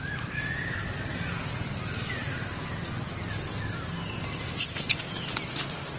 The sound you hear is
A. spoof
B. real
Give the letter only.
B